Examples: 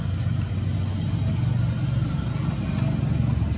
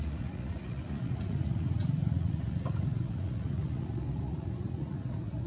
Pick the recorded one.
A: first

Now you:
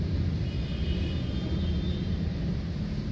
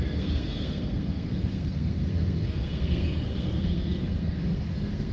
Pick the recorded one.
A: first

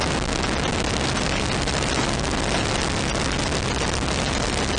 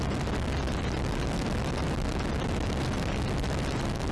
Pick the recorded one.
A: first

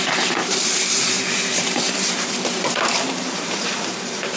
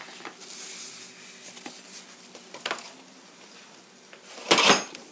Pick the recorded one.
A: second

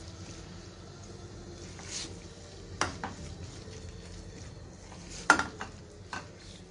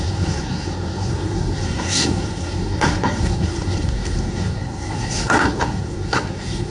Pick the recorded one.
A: first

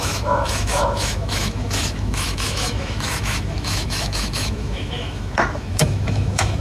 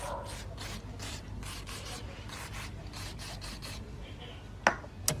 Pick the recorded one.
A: second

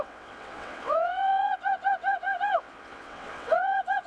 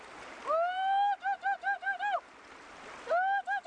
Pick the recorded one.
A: second